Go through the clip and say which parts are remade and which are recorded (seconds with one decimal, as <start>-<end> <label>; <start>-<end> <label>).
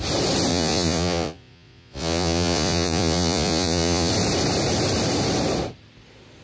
0.0-0.5 recorded; 0.5-4.1 remade; 4.1-6.4 recorded